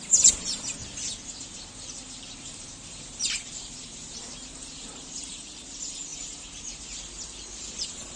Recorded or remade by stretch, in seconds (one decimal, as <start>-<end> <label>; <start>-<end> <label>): 0.0-0.8 remade; 0.8-1.4 recorded; 1.4-8.2 remade